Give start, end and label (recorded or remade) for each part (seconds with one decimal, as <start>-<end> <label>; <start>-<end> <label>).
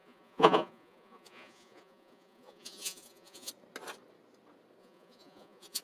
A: 0.0-3.5 remade; 3.5-4.8 recorded; 4.8-5.8 remade